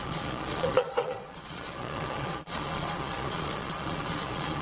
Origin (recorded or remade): remade